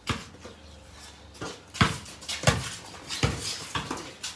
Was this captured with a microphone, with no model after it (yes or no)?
yes